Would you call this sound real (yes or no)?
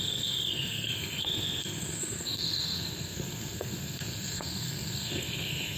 no